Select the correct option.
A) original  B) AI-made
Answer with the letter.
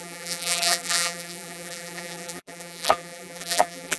B